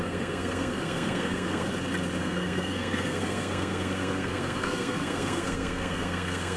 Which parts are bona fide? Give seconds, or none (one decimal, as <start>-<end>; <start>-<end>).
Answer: 1.7-2.2